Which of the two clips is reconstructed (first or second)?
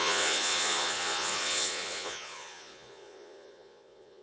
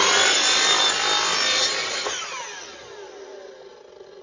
first